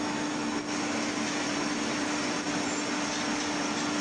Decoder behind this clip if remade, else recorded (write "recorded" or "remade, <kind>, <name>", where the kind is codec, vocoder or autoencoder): recorded